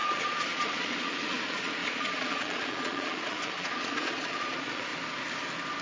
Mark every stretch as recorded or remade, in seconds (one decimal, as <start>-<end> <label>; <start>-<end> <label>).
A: 0.0-4.9 remade; 4.9-5.8 recorded